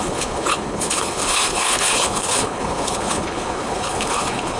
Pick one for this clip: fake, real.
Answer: fake